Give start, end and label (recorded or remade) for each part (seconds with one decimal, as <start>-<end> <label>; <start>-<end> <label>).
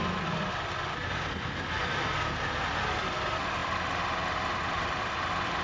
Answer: 0.0-3.6 recorded; 3.6-5.1 remade; 5.1-5.6 recorded